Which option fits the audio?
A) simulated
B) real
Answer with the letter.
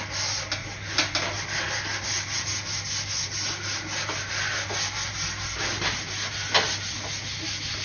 B